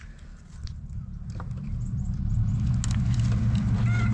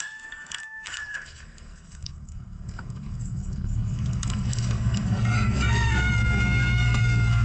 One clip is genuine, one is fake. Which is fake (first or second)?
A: second